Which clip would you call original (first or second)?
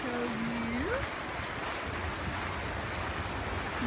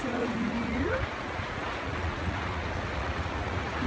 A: first